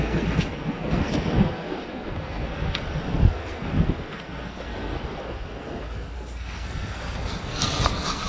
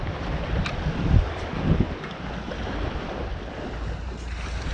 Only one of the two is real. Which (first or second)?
second